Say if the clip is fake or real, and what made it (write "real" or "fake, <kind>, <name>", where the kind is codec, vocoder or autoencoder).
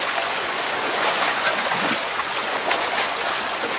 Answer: fake, vocoder, Vocos